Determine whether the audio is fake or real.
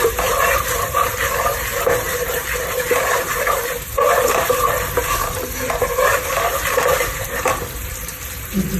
fake